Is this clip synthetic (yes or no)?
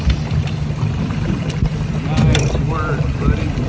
no